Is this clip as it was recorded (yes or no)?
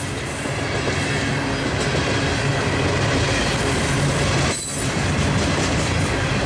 yes